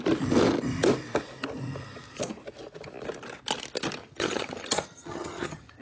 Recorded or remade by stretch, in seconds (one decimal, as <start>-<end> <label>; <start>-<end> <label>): 0.0-4.0 recorded; 4.0-5.8 remade